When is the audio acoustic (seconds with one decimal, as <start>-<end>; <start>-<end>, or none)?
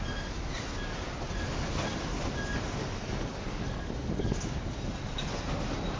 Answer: 0.0-2.8; 4.4-6.0